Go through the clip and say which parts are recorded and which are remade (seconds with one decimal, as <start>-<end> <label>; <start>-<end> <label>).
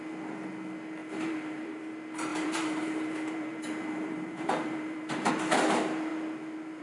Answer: 0.0-1.0 recorded; 1.0-1.8 remade; 1.8-2.3 recorded; 2.3-5.3 remade; 5.3-6.8 recorded